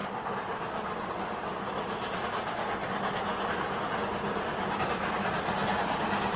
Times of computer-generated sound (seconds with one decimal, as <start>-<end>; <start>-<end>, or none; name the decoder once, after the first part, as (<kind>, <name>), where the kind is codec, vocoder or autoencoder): none